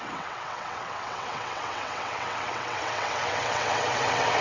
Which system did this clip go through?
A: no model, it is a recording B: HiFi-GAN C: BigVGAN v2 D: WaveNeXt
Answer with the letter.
D